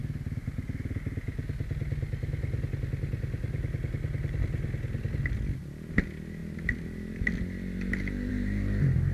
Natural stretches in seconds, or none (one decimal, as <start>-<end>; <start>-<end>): 0.0-9.1